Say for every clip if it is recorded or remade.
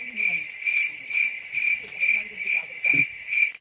recorded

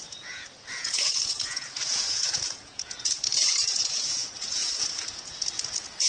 remade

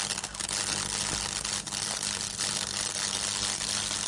recorded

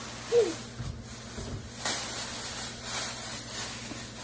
recorded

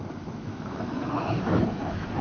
remade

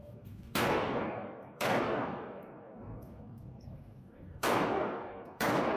remade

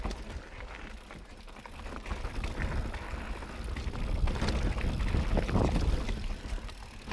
recorded